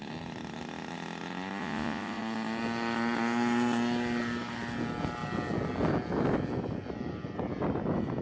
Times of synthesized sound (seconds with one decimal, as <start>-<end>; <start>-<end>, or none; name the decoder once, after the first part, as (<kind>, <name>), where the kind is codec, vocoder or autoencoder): 1.6-2.2 (vocoder, Vocos)